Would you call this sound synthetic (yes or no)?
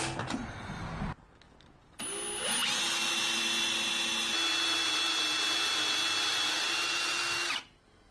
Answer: no